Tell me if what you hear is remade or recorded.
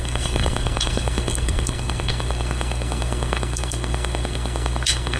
remade